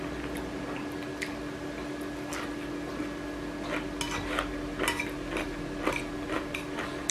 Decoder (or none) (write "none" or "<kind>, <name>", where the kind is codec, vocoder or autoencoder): none